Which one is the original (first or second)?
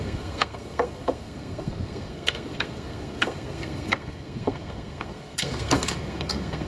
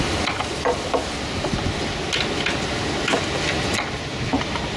second